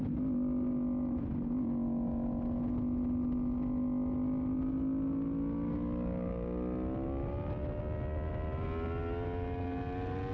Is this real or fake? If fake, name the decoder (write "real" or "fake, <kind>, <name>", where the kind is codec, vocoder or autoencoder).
real